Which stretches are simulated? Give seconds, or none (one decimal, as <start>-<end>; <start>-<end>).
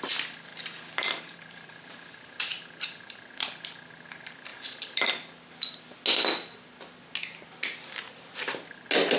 0.5-2.5; 4.5-5.1